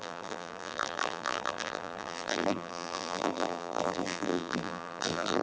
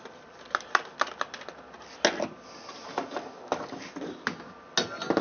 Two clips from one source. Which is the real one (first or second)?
second